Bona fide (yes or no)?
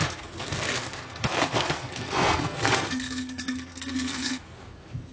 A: no